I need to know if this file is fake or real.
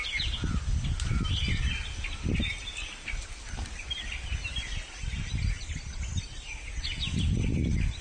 real